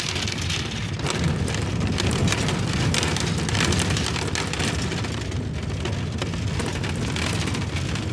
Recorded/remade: recorded